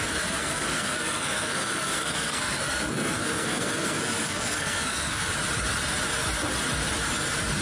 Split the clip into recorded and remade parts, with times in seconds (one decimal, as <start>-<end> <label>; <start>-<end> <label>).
0.0-5.3 remade; 5.3-7.6 recorded